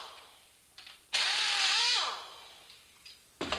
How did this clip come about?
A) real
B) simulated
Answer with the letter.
A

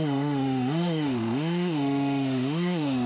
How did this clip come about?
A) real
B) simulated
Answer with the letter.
B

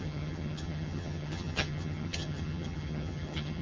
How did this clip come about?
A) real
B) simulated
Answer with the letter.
B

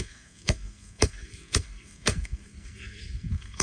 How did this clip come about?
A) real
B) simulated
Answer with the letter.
B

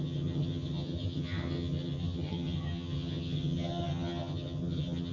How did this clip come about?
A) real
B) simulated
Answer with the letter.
B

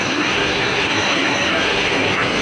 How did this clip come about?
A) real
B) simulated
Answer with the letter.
B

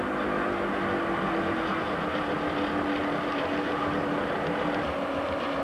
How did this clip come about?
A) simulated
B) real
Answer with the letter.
B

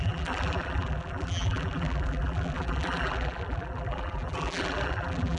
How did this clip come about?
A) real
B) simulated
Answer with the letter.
B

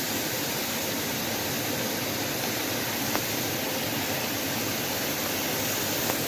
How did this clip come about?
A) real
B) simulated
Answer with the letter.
A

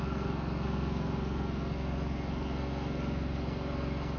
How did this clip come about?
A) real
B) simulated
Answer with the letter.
B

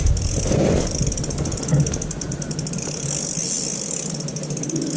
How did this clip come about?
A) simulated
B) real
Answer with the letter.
B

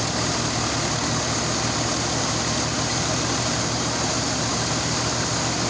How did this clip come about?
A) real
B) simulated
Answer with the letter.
A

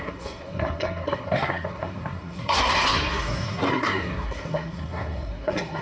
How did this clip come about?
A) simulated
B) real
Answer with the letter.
A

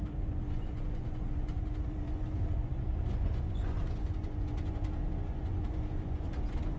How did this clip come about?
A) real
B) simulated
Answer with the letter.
B